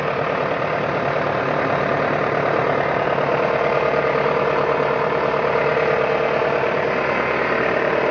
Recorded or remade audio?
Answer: remade